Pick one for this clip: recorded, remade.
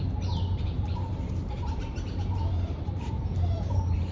remade